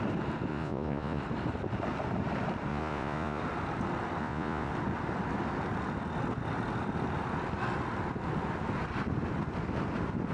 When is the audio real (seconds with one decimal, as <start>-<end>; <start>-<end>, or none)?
0.0-0.5; 1.2-2.7; 3.4-4.2; 4.7-10.3